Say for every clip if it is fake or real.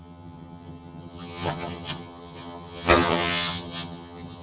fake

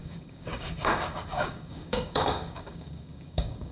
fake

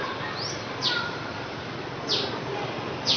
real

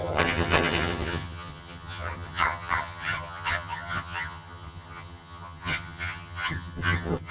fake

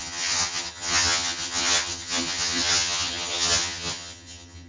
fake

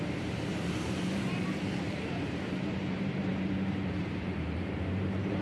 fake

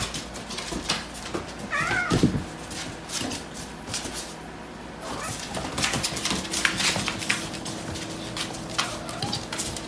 real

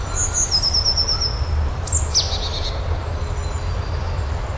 real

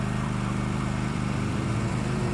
fake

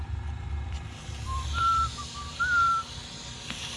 fake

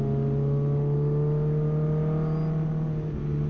real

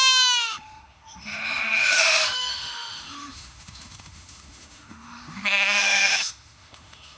fake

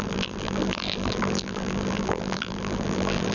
fake